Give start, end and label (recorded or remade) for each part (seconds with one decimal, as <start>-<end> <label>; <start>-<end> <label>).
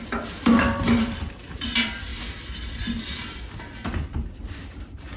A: 0.0-2.1 remade; 2.1-4.5 recorded; 4.5-5.2 remade